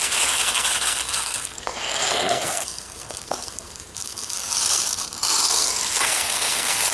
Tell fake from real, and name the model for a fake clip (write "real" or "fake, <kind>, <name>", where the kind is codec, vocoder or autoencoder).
fake, codec, SNAC